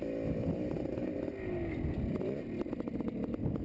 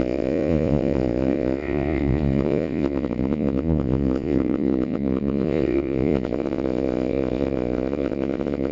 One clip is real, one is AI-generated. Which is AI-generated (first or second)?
second